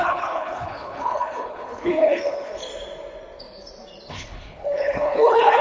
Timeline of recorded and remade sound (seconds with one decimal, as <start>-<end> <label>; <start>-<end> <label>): 0.0-2.6 remade; 2.6-4.1 recorded; 4.1-5.6 remade